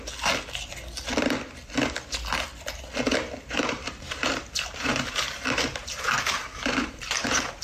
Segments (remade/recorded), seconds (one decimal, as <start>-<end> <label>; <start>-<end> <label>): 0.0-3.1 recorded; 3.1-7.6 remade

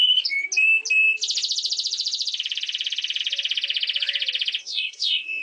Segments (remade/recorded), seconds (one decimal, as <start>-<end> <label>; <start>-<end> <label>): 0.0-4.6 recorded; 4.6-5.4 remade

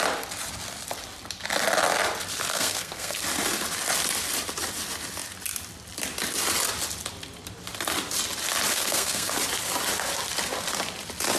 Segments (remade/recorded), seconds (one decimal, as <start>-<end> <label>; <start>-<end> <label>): 0.0-2.5 recorded; 2.5-3.2 remade; 3.2-8.7 recorded; 8.7-9.3 remade; 9.3-11.4 recorded

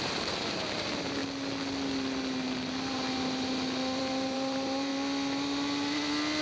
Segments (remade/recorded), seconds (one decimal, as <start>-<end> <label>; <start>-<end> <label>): 0.0-1.2 remade; 1.2-4.0 recorded; 4.0-4.9 remade; 4.9-6.4 recorded

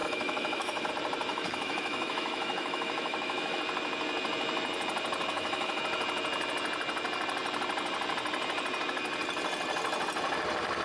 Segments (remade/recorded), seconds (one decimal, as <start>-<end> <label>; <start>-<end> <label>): 0.0-0.9 remade; 0.9-1.3 recorded; 1.3-3.6 remade; 3.6-5.3 recorded; 5.3-5.8 remade; 5.8-10.8 recorded